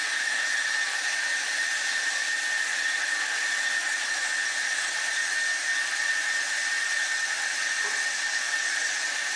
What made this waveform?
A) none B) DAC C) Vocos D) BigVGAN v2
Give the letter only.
A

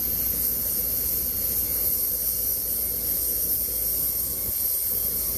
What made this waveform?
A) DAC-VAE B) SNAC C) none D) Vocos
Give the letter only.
C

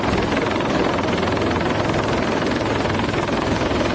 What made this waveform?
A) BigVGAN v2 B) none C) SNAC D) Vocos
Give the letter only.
B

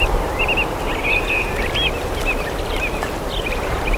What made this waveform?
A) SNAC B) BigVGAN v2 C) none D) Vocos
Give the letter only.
C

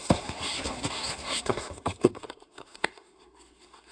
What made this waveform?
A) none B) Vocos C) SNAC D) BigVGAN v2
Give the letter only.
C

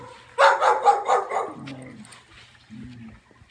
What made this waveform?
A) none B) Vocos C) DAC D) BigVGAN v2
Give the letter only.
A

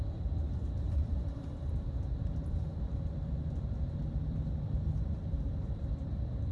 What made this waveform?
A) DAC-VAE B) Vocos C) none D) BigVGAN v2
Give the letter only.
D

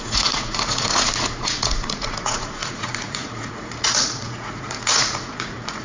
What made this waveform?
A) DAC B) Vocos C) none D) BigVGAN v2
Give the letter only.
B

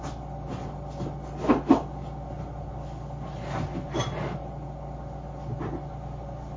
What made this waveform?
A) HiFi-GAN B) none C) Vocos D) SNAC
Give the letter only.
B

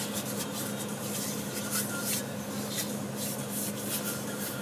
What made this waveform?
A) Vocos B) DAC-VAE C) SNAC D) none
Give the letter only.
D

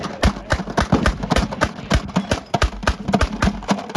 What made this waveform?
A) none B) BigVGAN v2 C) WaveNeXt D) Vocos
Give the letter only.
B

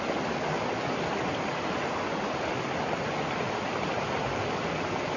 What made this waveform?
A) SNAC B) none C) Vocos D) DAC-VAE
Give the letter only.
B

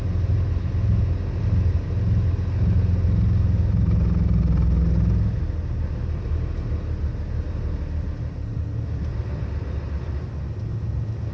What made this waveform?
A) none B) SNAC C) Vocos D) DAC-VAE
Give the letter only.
A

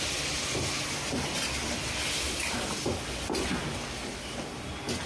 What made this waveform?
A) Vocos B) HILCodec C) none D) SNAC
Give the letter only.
C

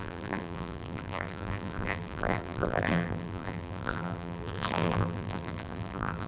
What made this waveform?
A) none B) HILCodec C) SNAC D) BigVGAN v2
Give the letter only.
D